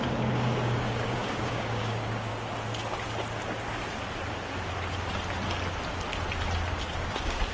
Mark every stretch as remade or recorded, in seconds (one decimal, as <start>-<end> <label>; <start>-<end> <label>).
0.0-2.3 remade; 2.3-6.7 recorded; 6.7-7.5 remade